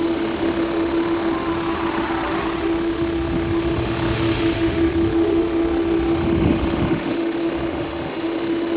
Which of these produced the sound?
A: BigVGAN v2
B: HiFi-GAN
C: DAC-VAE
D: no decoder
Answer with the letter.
C